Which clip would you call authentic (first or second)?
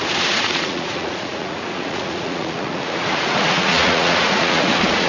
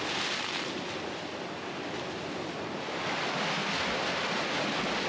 second